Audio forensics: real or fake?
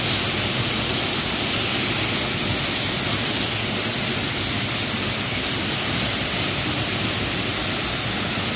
real